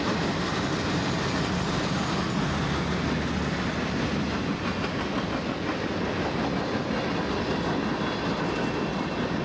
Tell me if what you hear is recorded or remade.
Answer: recorded